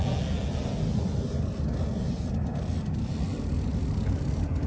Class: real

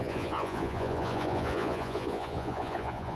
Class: fake